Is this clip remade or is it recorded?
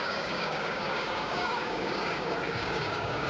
remade